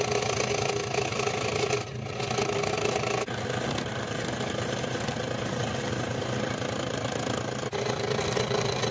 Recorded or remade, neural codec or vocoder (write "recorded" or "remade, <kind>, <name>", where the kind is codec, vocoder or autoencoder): recorded